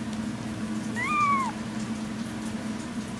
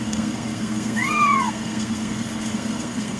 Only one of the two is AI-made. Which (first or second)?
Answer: second